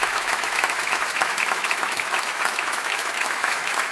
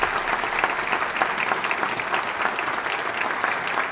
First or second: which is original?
second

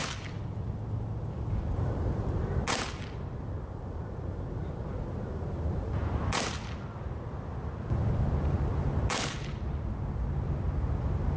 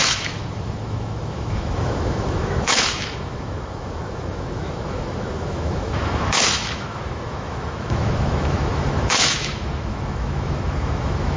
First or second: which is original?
first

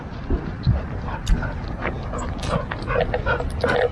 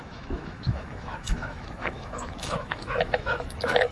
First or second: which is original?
first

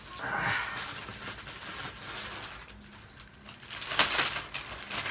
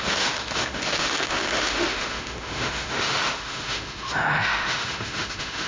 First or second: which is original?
first